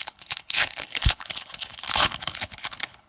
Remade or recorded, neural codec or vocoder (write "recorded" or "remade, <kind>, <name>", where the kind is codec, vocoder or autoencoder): remade, codec, HILCodec